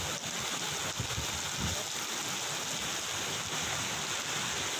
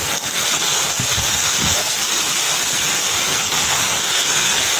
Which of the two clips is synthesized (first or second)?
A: second